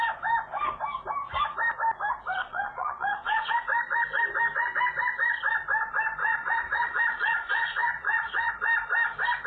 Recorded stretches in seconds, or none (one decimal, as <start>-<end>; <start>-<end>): 0.0-2.4; 3.5-6.2; 8.5-9.5